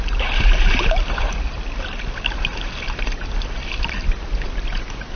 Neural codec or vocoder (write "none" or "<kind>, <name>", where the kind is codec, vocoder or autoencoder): none